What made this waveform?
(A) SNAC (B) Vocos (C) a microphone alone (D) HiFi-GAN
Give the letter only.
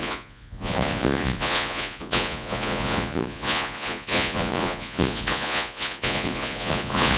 B